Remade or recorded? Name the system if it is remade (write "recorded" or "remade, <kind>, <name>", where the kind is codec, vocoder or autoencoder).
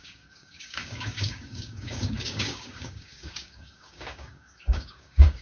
remade, codec, DAC